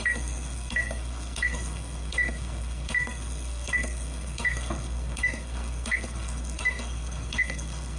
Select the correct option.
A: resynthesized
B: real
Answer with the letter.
A